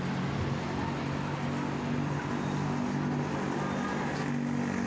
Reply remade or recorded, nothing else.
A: recorded